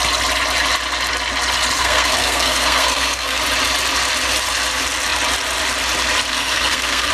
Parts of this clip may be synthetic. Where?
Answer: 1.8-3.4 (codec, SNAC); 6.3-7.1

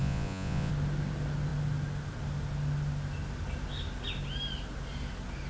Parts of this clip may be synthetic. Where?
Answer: 0.0-0.7 (vocoder, Vocos)

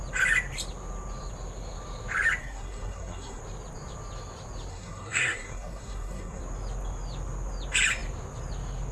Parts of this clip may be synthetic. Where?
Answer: 2.4-3.4 (codec, SNAC); 4.7-6.4

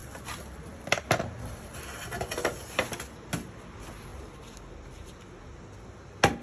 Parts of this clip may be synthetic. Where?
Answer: none

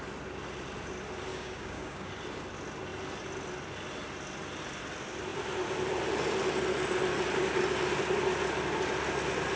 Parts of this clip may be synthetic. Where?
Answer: 1.3-2.1 (codec, DAC)